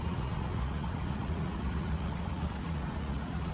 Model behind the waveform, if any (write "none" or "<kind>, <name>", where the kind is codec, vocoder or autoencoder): vocoder, Vocos